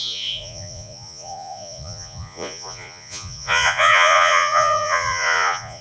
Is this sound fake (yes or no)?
yes